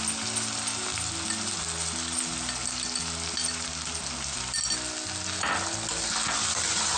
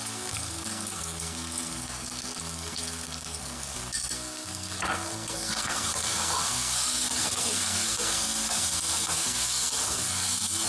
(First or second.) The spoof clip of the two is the second